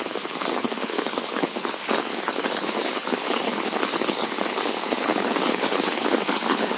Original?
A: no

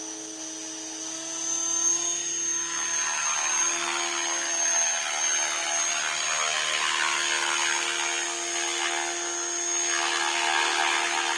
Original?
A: yes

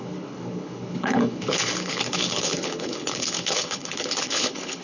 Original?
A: no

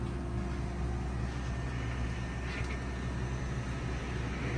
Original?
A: yes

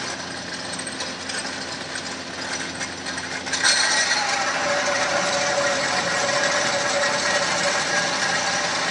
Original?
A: yes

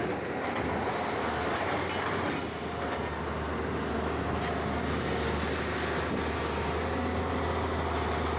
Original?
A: yes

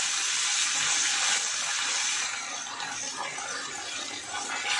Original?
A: yes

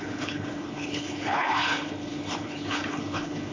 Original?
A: no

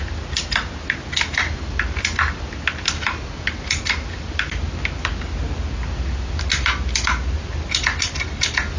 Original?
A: yes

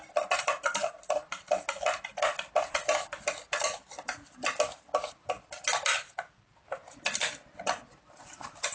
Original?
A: yes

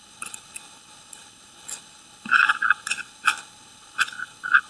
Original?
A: no